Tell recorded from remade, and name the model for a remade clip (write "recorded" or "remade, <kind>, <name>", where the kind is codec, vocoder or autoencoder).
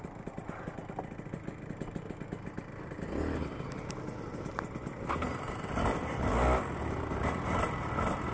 recorded